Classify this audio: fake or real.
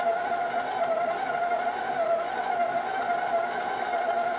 real